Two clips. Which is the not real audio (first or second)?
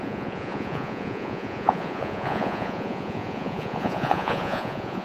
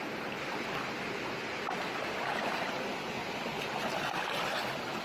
first